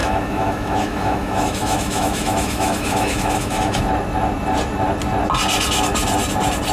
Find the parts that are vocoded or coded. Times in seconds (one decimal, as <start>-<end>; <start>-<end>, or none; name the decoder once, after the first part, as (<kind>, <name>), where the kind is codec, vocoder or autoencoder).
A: 0.0-3.8 (autoencoder, DAC-VAE)